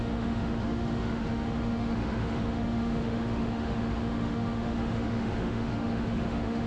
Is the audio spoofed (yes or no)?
yes